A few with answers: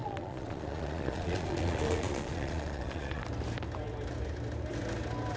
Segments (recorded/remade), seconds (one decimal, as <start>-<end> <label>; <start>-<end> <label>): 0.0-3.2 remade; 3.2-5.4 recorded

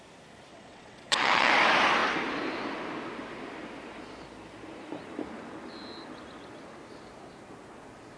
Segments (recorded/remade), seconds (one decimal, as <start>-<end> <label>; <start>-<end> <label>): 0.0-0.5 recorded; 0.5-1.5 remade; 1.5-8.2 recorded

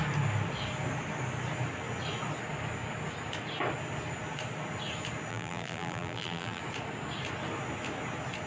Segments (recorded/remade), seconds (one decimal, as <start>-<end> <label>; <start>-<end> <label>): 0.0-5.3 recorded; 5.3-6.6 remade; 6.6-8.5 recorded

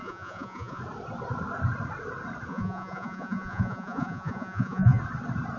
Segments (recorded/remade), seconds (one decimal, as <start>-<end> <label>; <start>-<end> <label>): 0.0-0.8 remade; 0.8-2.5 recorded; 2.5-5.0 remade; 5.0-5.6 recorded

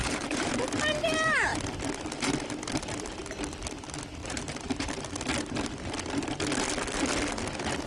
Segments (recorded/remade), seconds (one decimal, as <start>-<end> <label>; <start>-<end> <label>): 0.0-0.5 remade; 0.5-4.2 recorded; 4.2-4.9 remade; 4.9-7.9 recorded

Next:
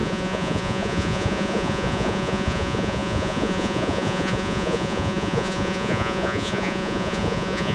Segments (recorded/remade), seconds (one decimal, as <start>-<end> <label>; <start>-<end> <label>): 0.0-7.7 remade

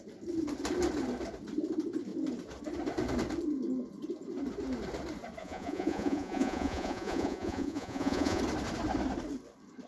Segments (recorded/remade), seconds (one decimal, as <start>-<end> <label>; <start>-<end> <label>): 0.0-5.4 recorded; 5.4-8.4 remade; 8.4-9.9 recorded